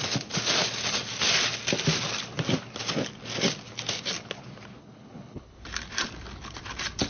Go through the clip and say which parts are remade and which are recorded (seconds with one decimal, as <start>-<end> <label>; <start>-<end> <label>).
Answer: 0.0-4.8 recorded; 4.8-5.6 remade; 5.6-7.1 recorded